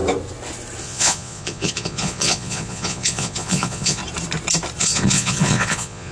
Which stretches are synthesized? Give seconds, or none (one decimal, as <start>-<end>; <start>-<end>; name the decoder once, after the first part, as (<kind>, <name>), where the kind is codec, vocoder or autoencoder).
0.8-4.0 (vocoder, Vocos); 4.8-6.1